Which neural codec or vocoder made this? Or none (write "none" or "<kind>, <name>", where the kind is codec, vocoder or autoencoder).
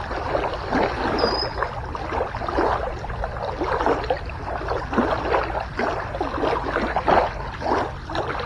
none